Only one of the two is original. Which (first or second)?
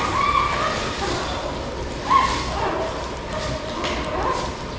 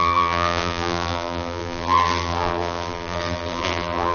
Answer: first